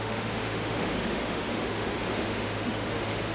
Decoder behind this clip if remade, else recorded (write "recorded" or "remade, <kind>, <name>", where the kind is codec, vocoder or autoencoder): remade, autoencoder, DAC-VAE